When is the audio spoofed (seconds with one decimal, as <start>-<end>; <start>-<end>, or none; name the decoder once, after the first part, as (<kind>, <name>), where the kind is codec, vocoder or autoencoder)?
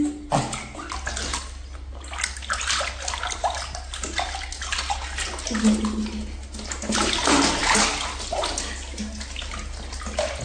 none